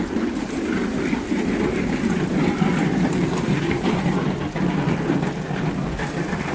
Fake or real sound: real